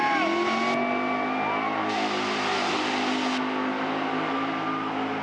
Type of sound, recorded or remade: recorded